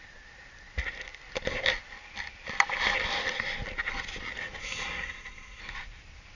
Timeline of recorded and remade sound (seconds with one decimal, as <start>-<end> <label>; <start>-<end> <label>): 0.0-4.6 recorded; 4.6-5.6 remade; 5.6-6.4 recorded